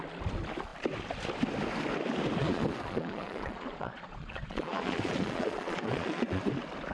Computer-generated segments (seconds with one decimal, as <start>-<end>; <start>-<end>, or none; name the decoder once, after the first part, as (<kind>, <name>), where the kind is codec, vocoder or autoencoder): 2.4-6.5 (vocoder, Vocos)